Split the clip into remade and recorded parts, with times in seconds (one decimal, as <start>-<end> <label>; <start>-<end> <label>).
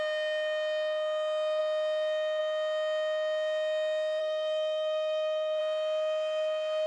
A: 0.0-4.2 recorded; 4.2-5.6 remade; 5.6-6.9 recorded